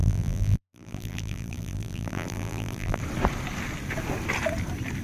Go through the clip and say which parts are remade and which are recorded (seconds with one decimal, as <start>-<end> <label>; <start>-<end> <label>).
0.0-3.0 remade; 3.0-5.0 recorded